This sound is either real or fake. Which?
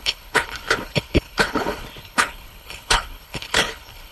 fake